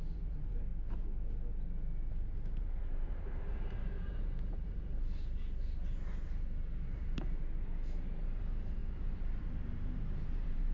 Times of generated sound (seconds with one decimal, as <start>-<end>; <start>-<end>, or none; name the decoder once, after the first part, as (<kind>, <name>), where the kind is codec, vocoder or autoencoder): 0.0-0.7 (vocoder, BigVGAN v2); 2.1-10.7